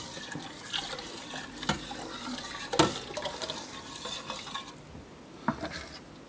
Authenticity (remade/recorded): recorded